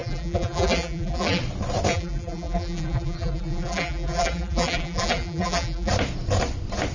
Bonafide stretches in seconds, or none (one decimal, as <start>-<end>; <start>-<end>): 1.4-1.9; 5.9-6.9